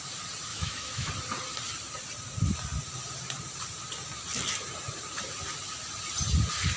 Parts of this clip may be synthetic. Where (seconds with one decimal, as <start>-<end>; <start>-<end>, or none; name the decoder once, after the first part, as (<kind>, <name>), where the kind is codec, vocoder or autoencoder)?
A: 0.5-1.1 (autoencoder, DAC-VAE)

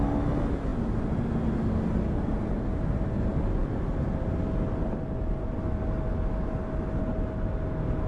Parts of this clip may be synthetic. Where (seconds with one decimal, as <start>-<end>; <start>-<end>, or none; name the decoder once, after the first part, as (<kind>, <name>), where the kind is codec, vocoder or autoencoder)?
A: none

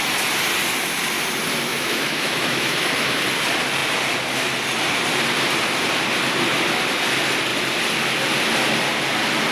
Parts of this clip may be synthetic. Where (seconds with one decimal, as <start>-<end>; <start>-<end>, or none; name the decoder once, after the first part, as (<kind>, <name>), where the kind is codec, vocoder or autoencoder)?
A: 1.7-3.2 (autoencoder, DAC-VAE)

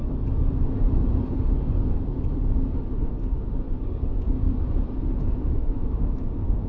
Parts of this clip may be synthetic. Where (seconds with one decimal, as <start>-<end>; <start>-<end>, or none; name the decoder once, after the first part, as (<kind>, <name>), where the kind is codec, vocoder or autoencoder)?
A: 1.2-2.0 (autoencoder, DAC-VAE); 3.0-6.7

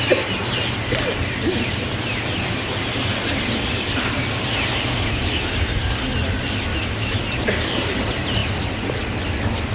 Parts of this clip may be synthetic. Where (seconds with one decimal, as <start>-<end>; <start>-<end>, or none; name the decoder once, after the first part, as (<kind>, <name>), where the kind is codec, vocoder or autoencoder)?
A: 6.7-7.2 (autoencoder, DAC-VAE)

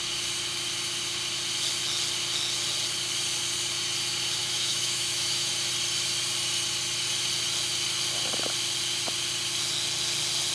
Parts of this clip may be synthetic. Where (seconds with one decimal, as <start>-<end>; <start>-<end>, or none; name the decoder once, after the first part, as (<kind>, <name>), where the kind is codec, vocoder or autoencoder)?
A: 4.4-5.5 (autoencoder, DAC-VAE)

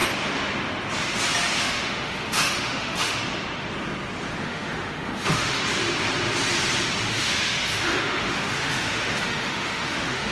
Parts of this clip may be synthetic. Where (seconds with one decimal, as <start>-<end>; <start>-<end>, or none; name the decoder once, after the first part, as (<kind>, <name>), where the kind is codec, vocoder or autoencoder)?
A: 1.6-3.2 (autoencoder, DAC-VAE); 4.4-5.6; 7.1-10.3

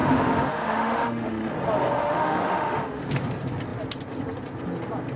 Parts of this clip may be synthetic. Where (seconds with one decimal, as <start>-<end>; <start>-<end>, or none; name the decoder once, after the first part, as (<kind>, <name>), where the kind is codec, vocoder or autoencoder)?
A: 0.0-1.5 (autoencoder, DAC-VAE); 2.0-3.0